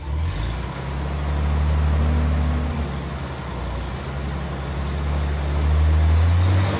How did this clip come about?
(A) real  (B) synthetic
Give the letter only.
A